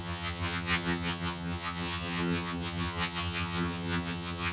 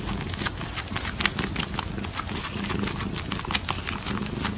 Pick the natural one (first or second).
second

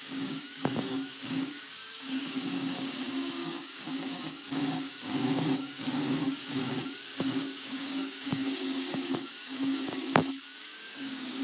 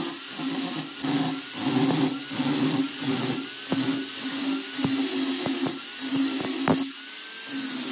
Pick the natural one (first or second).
second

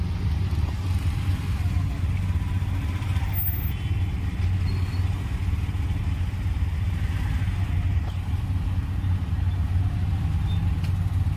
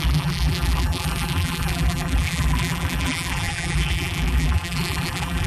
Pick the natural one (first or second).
first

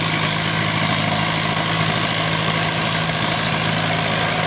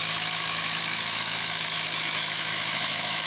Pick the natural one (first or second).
first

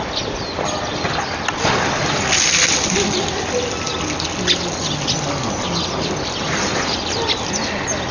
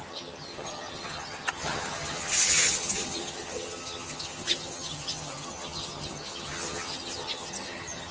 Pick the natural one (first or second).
first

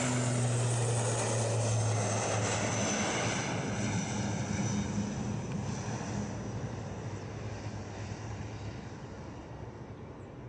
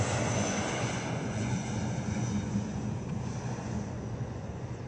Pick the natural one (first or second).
first